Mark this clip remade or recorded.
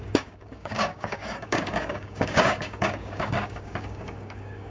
remade